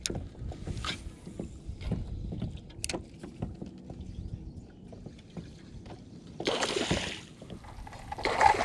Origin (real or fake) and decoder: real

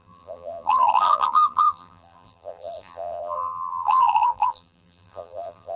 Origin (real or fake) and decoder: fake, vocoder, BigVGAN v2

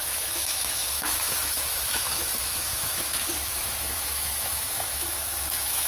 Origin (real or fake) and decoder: fake, autoencoder, DAC-VAE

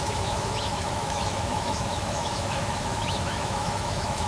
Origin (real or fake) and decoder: fake, autoencoder, DAC-VAE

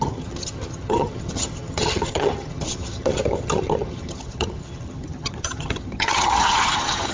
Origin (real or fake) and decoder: fake, vocoder, HiFi-GAN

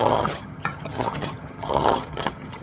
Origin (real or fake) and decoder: fake, vocoder, HiFi-GAN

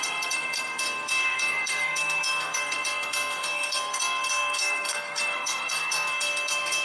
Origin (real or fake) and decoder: fake, codec, SNAC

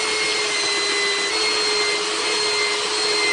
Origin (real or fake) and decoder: real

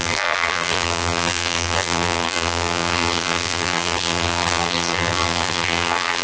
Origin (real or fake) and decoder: fake, vocoder, BigVGAN v2